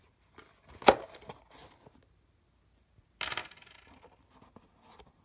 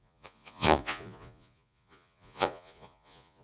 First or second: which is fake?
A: second